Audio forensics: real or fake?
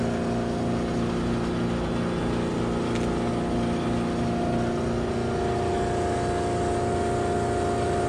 real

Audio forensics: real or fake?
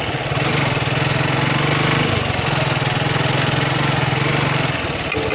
real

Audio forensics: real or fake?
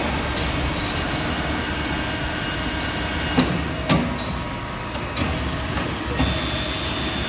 real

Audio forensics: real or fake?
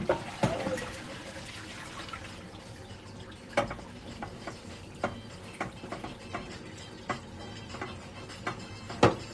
real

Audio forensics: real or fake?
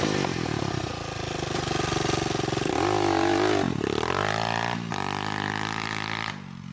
real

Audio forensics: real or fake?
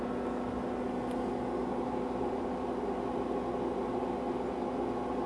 real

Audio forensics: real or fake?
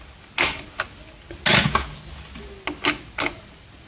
real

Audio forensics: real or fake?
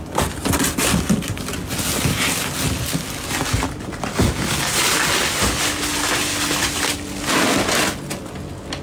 real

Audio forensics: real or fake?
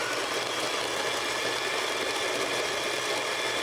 real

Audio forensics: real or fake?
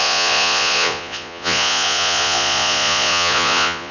fake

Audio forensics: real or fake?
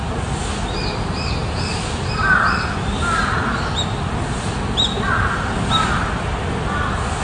real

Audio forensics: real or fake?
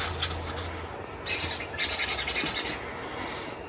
real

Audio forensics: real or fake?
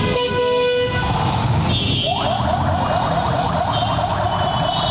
real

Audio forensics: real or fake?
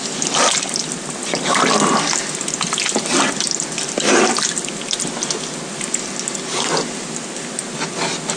real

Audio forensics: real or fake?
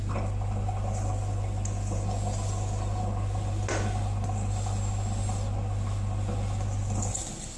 real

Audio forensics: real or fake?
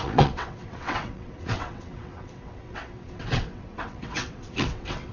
fake